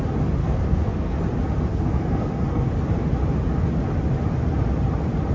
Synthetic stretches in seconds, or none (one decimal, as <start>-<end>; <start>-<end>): 0.4-1.2; 1.7-2.7